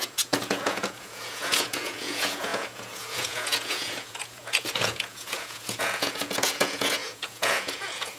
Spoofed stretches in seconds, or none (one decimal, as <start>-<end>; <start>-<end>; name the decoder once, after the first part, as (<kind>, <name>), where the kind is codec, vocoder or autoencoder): 0.0-8.2 (vocoder, Vocos)

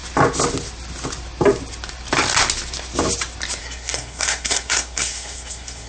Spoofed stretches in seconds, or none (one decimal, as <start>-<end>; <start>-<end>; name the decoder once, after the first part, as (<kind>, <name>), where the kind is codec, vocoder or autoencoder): 3.6-5.9 (codec, SNAC)

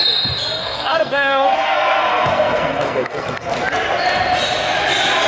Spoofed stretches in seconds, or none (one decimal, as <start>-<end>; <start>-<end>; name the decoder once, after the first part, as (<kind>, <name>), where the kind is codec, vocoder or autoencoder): 0.6-3.5 (codec, SNAC)

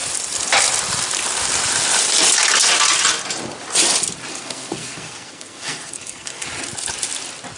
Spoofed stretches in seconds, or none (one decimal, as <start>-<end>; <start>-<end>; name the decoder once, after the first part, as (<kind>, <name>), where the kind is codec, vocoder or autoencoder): 4.3-6.5 (codec, SNAC)